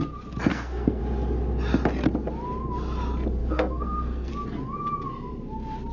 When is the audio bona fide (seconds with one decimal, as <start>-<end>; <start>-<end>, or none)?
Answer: 0.0-0.5; 1.0-3.4; 4.3-5.9